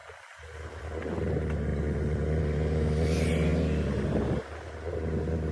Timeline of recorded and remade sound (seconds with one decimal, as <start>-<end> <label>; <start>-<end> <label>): 0.0-5.5 recorded